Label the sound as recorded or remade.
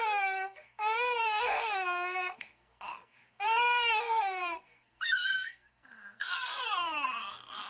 remade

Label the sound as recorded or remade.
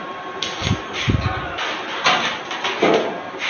recorded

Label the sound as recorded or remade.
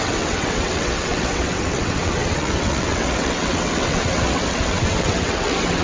remade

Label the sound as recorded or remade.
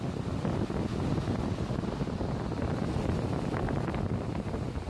recorded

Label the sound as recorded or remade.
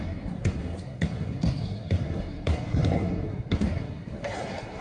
remade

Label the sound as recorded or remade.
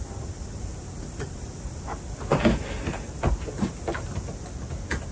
recorded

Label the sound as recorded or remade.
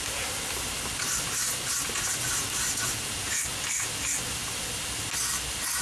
recorded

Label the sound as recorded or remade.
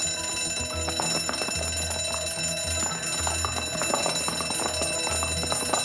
recorded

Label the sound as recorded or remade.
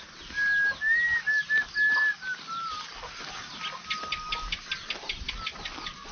recorded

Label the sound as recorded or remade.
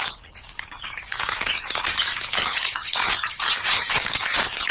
remade